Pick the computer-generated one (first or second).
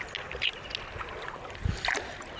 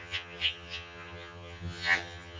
second